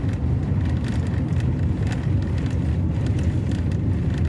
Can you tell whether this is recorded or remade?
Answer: recorded